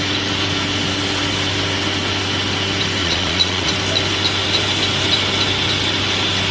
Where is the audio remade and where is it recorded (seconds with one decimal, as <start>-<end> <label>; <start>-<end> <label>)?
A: 0.0-3.0 recorded; 3.0-3.7 remade; 3.7-6.5 recorded